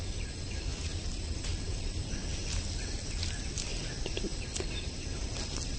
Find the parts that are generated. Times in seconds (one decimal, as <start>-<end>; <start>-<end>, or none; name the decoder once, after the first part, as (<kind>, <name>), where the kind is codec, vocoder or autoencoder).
none